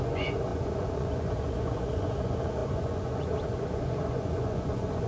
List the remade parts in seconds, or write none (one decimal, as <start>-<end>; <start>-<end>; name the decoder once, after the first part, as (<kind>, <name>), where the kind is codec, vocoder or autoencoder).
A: 0.0-5.1 (vocoder, Vocos)